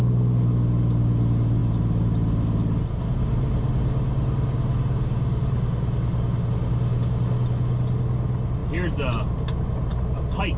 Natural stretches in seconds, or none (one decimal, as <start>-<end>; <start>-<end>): 0.0-10.6